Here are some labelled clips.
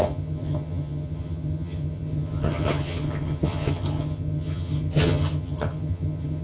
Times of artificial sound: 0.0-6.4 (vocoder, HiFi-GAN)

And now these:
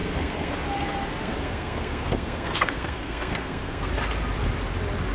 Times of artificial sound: 0.0-0.5 (codec, SNAC); 1.2-3.9

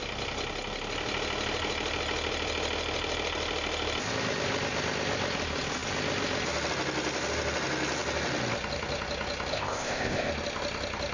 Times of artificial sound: 9.5-10.3 (codec, ZipCodec)

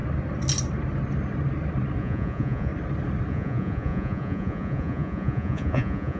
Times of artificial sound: 2.0-2.7 (vocoder, Vocos); 3.3-6.2

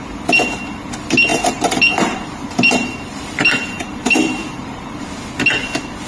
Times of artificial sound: 1.3-5.0 (vocoder, BigVGAN v2)